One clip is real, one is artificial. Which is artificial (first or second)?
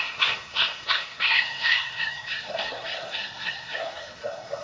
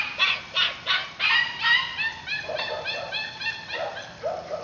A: first